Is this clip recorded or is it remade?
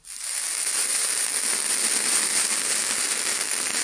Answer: remade